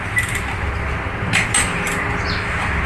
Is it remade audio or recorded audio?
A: recorded